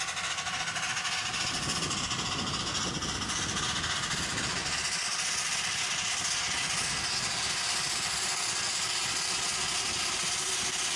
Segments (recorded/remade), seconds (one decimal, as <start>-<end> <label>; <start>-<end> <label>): 0.0-11.0 recorded